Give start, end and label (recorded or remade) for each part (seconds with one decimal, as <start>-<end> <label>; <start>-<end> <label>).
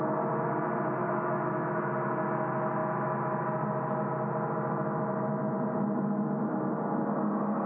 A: 0.0-1.0 recorded; 1.0-1.8 remade; 1.8-7.7 recorded